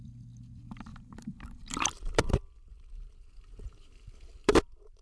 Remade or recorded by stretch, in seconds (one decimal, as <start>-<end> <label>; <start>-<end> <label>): 0.0-0.9 recorded; 0.9-2.7 remade; 2.7-4.4 recorded; 4.4-5.0 remade